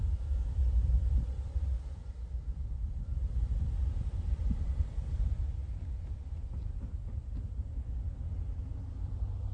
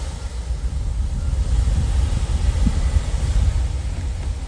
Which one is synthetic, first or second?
first